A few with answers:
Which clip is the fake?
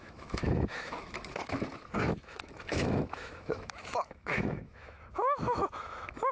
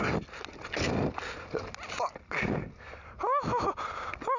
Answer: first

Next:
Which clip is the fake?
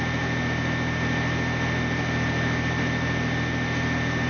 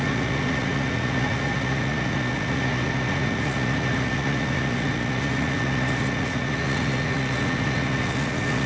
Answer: second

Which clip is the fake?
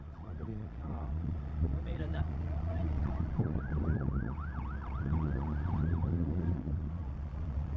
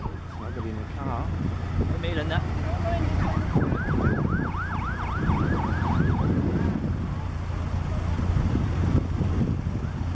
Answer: first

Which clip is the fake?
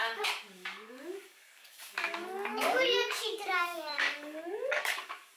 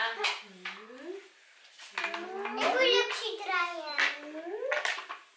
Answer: first